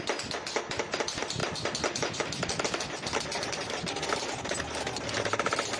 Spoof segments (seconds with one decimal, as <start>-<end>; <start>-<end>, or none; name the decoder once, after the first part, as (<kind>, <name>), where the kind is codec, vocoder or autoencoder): none